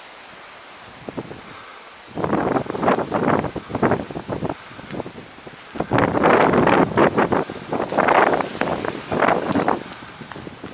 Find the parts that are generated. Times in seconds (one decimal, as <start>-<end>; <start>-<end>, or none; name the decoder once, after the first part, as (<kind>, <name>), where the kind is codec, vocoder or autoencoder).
none